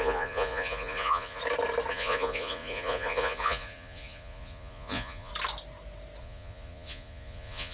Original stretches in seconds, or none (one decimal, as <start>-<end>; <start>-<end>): 1.4-1.9; 5.3-6.2